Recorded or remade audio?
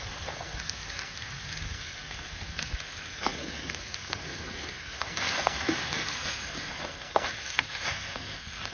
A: remade